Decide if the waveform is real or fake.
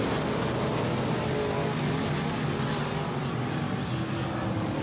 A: real